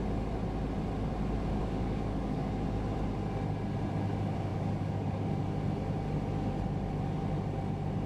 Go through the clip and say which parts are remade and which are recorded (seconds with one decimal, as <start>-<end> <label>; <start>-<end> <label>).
0.0-1.6 recorded; 1.6-2.5 remade; 2.5-4.5 recorded; 4.5-5.4 remade; 5.4-8.1 recorded

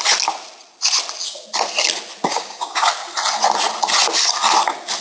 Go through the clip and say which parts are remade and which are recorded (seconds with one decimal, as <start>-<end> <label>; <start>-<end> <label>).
0.0-2.3 recorded; 2.3-2.9 remade; 2.9-5.0 recorded

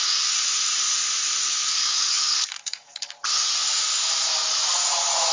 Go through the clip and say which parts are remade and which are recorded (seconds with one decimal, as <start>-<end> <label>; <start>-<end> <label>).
0.0-1.6 recorded; 1.6-3.1 remade; 3.1-5.3 recorded

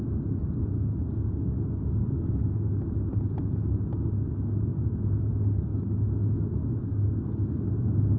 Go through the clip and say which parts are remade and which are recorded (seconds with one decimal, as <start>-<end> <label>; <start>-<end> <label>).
0.0-0.9 recorded; 0.9-2.8 remade; 2.8-5.7 recorded; 5.7-6.2 remade; 6.2-6.8 recorded; 6.8-7.7 remade; 7.7-8.2 recorded

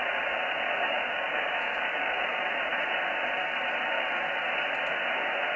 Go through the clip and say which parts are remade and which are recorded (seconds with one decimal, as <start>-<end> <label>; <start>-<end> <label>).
0.0-0.9 recorded; 0.9-2.4 remade; 2.4-5.6 recorded

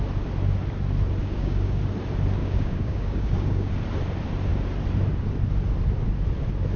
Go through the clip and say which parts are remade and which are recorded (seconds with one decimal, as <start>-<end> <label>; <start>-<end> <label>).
0.0-1.2 recorded; 1.2-1.8 remade; 1.8-2.4 recorded; 2.4-3.7 remade; 3.7-6.8 recorded